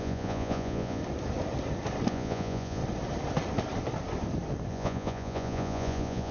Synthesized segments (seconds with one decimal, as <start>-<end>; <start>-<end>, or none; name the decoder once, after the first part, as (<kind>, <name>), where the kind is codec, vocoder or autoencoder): 0.0-1.0 (vocoder, Vocos); 2.1-2.8; 4.7-6.3